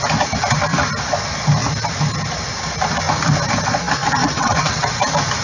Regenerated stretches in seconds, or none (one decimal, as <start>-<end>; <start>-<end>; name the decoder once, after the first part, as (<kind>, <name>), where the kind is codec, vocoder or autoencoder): 4.2-5.0 (vocoder, WaveNeXt)